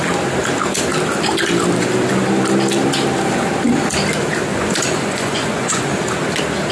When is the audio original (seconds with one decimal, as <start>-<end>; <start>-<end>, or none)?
0.0-4.5; 5.9-6.7